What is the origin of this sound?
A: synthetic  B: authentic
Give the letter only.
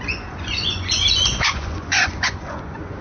A